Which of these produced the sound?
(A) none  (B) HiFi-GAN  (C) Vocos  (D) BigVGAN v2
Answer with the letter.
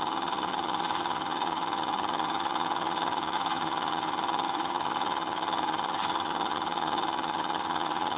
B